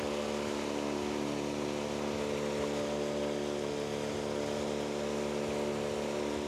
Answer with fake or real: real